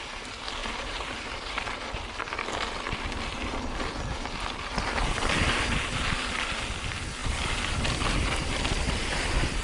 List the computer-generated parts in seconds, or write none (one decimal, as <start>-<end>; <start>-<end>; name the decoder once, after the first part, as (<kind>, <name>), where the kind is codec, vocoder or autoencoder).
0.6-1.5 (vocoder, BigVGAN v2); 7.2-7.8